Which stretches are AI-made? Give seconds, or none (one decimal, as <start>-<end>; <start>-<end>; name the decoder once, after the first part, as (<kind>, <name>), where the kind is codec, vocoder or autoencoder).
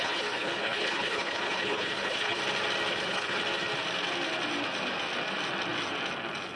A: 0.0-2.4 (codec, HILCodec); 2.9-3.4